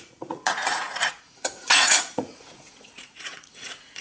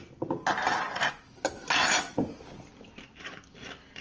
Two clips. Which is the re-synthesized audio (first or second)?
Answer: first